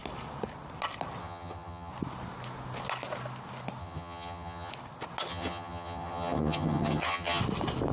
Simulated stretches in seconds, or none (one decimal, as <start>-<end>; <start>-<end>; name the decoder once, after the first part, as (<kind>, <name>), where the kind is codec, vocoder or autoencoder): 1.2-1.9 (vocoder, HiFi-GAN); 3.8-4.7; 5.3-7.4